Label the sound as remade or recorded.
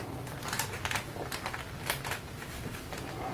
recorded